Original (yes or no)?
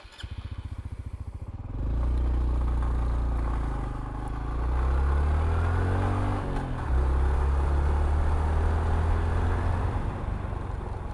yes